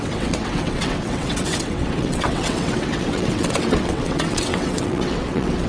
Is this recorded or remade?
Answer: remade